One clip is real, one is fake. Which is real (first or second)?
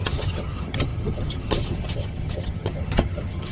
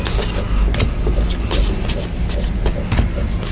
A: second